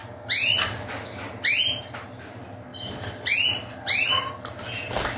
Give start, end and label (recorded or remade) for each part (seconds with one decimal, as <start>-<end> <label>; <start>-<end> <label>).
0.0-5.2 recorded